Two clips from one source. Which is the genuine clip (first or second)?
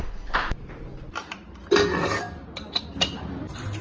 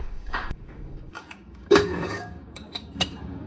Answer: first